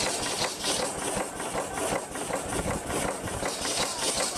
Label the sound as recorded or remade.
recorded